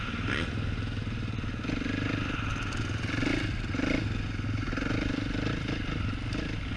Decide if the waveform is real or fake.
real